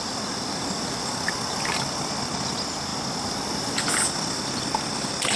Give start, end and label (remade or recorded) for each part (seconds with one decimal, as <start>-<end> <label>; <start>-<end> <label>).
0.0-5.4 recorded